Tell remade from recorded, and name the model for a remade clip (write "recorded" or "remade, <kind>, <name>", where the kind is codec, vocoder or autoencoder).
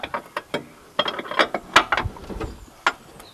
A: recorded